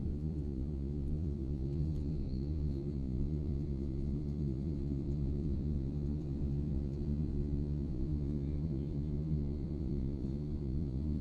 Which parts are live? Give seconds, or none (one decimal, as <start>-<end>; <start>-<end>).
none